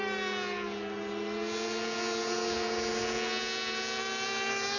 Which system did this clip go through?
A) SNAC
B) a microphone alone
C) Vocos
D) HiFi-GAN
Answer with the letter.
B